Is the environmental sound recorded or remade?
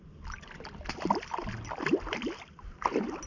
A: recorded